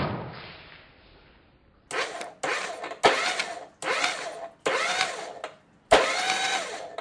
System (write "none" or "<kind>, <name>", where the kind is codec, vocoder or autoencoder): none